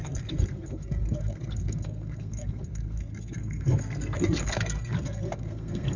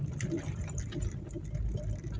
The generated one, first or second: first